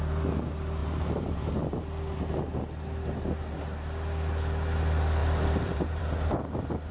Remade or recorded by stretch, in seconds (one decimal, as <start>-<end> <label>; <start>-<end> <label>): 0.0-0.8 recorded; 0.8-1.8 remade; 1.8-5.2 recorded; 5.2-6.0 remade; 6.0-6.9 recorded